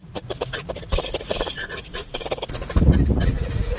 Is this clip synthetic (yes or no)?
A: yes